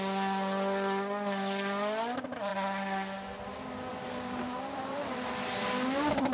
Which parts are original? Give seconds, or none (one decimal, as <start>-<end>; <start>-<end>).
0.0-3.9; 5.3-6.3